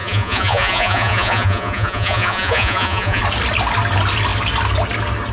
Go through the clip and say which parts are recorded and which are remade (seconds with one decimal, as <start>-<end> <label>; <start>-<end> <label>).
0.0-3.2 remade; 3.2-5.3 recorded